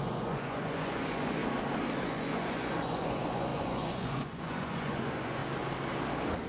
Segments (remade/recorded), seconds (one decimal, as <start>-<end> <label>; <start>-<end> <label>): 0.0-1.4 remade; 1.4-2.0 recorded; 2.0-5.4 remade; 5.4-6.5 recorded